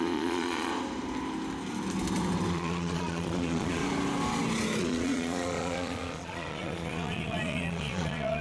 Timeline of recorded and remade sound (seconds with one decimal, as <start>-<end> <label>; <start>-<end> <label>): 0.0-0.7 remade; 0.7-2.5 recorded; 2.5-3.8 remade; 3.8-4.8 recorded; 4.8-8.4 remade